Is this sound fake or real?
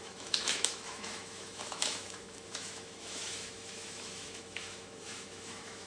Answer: fake